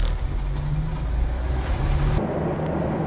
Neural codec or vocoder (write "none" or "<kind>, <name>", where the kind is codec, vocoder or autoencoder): none